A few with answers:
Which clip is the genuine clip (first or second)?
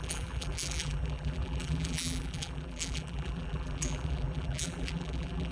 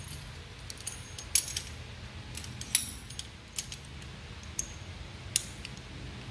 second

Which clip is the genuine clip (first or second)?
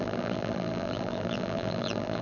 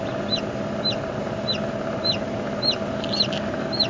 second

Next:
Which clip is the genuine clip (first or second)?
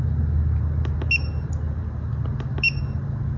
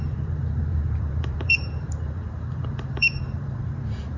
first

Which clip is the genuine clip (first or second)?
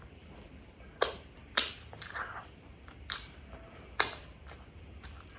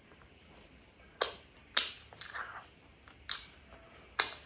second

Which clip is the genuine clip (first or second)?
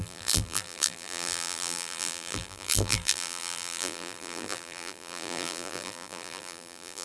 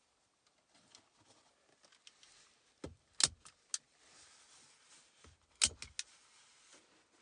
second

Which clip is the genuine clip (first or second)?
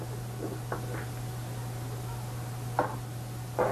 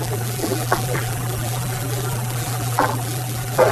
first